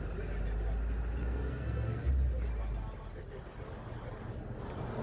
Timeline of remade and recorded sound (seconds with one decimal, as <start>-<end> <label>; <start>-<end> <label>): 0.0-1.2 recorded; 1.2-2.1 remade; 2.1-5.0 recorded